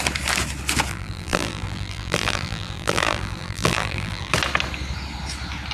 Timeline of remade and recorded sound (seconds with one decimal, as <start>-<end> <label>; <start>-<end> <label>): 0.0-0.9 recorded; 0.9-4.3 remade; 4.3-5.7 recorded